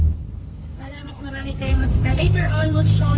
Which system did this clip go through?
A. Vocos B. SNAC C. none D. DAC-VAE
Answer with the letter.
B